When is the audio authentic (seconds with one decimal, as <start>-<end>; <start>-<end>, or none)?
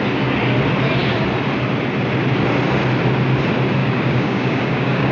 0.0-3.8